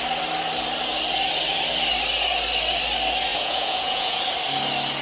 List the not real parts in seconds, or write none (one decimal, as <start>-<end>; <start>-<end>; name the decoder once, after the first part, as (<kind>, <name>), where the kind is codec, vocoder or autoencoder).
3.3-4.2 (vocoder, Vocos)